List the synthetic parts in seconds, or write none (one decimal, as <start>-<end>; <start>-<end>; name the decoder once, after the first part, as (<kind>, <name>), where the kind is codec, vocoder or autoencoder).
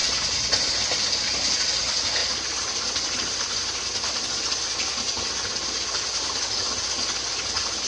none